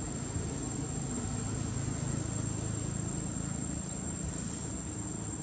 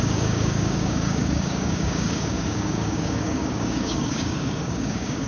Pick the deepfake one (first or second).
second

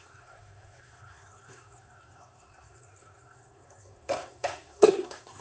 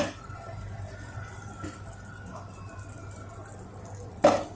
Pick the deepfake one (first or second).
first